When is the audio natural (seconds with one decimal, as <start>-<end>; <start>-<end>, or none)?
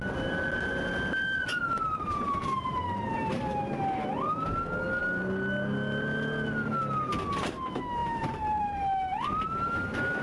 0.0-1.5; 3.8-8.0; 8.8-10.2